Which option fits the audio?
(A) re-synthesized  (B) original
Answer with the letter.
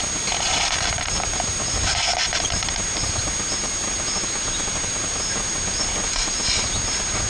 B